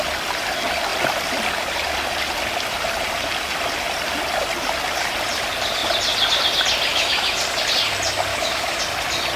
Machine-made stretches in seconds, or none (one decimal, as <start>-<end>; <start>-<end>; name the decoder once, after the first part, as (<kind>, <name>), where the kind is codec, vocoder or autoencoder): 6.9-7.4 (autoencoder, DAC-VAE); 8.3-8.8